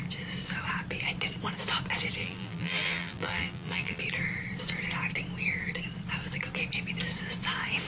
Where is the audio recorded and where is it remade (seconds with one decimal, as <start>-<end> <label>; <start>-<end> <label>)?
0.0-2.2 recorded; 2.2-4.0 remade; 4.0-7.9 recorded